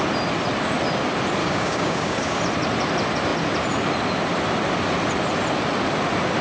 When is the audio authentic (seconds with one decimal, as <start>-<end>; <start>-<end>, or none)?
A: 0.0-1.4; 2.4-6.4